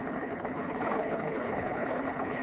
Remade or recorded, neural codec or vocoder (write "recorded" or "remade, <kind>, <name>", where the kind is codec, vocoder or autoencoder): remade, codec, HILCodec